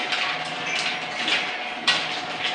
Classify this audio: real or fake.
real